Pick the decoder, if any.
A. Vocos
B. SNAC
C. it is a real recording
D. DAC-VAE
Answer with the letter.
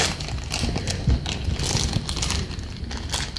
C